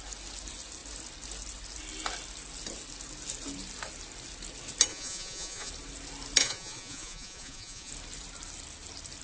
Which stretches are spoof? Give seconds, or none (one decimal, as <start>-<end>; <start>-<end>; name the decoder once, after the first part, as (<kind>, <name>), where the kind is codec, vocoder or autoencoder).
4.9-5.7 (vocoder, Vocos); 6.4-7.9